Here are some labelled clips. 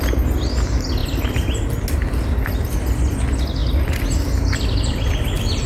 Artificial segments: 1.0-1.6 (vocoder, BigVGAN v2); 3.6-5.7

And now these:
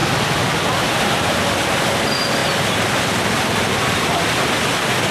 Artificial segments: none

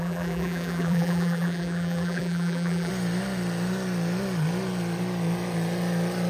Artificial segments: 0.0-2.9 (vocoder, BigVGAN v2)

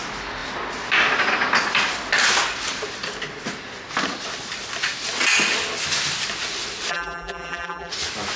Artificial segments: 6.9-7.9 (vocoder, BigVGAN v2)

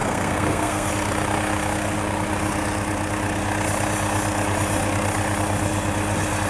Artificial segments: 0.0-0.9 (codec, SNAC)

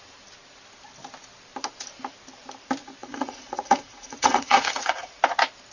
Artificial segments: 3.0-5.2 (vocoder, Vocos)

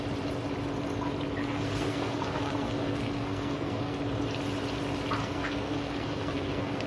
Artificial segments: 1.4-4.0 (codec, SNAC); 5.2-6.9

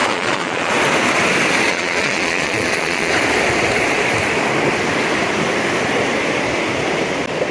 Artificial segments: 0.0-0.7 (vocoder, Vocos); 1.7-3.1